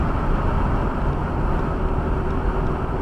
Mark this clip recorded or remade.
recorded